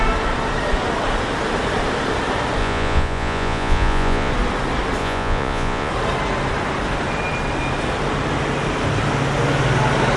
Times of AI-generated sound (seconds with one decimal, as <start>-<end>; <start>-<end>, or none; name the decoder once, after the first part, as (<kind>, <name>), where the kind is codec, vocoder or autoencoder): 2.6-4.3 (vocoder, Vocos); 5.0-5.9